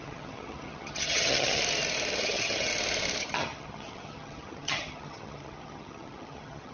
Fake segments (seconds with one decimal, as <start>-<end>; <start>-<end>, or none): 0.0-1.6; 2.2-2.7; 3.2-6.7